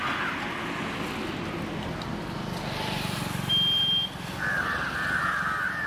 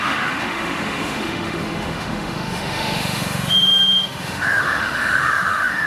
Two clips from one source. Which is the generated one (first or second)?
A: second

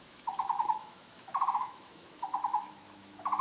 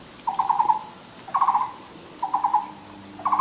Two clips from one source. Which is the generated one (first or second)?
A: first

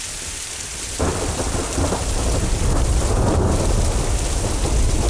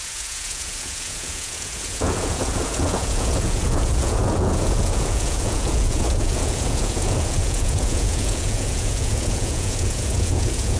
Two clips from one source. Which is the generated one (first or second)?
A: second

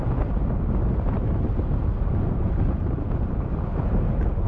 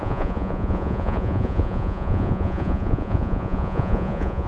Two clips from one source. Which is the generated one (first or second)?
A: second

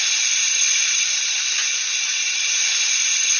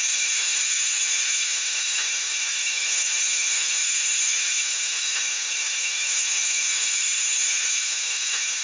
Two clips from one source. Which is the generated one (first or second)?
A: second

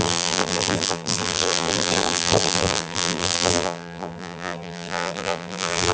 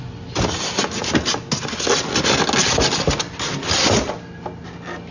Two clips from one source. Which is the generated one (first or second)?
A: first